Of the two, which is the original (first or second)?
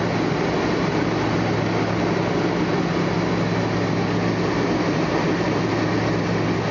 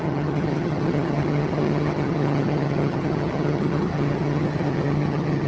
first